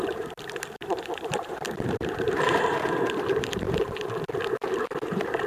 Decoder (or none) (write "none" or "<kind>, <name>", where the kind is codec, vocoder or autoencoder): vocoder, BigVGAN v2